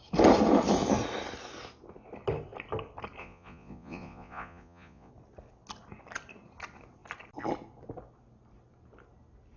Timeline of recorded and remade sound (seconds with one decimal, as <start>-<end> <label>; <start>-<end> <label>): 0.0-3.2 recorded; 3.2-5.1 remade; 5.1-9.6 recorded